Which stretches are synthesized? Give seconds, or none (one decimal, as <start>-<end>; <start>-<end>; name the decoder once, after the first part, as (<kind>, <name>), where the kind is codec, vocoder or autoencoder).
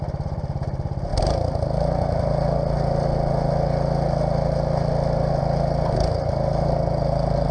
none